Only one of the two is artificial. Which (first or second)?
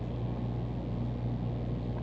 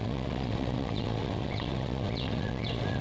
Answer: second